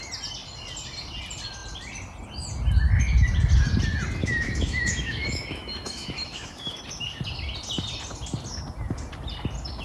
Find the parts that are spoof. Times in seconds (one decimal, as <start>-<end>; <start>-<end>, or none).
4.2-6.8